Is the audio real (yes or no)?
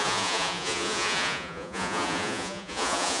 no